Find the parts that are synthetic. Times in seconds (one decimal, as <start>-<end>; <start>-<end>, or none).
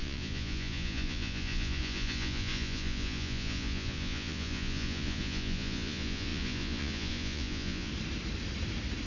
0.0-7.9